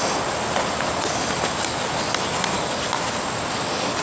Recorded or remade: recorded